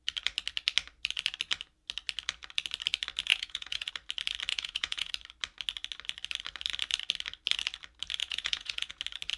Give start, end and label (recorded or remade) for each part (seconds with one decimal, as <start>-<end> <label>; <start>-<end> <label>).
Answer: 0.0-3.3 recorded; 3.3-3.9 remade; 3.9-4.5 recorded; 4.5-5.1 remade; 5.1-8.2 recorded; 8.2-8.9 remade; 8.9-9.4 recorded